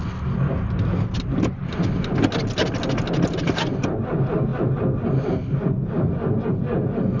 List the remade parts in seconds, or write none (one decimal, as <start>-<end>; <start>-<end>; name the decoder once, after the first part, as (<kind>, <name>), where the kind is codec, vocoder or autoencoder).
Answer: none